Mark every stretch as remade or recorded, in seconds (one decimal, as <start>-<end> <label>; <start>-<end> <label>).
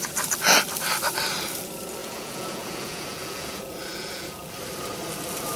0.0-2.0 recorded; 2.0-4.5 remade; 4.5-5.6 recorded